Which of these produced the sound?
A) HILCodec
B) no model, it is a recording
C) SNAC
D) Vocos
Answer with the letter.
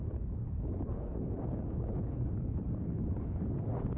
A